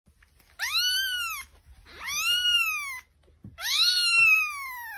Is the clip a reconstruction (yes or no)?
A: no